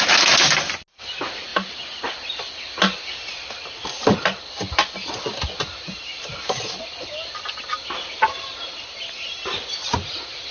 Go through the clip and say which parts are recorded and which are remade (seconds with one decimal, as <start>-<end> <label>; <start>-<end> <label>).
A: 0.0-10.5 recorded